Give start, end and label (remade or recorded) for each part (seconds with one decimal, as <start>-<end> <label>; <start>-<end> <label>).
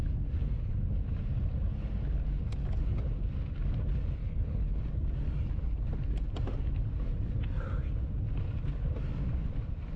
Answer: 0.0-4.2 recorded; 4.2-4.8 remade; 4.8-10.0 recorded